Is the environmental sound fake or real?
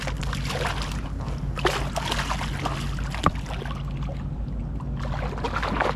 real